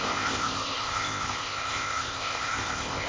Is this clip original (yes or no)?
no